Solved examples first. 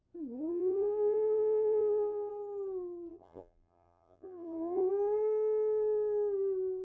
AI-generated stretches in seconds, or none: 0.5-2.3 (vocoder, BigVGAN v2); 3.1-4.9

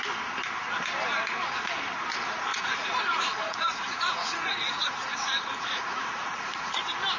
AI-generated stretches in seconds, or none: 2.5-6.8 (vocoder, Vocos)

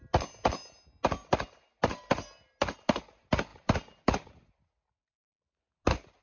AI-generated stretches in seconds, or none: none

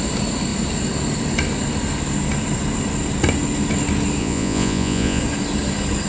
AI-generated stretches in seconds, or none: 4.2-5.2 (vocoder, Vocos)

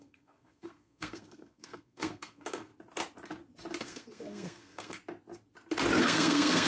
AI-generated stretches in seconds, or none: 0.0-2.7 (codec, SNAC); 3.8-5.0; 6.0-6.7